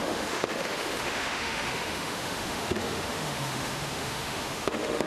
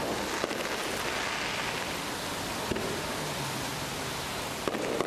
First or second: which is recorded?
second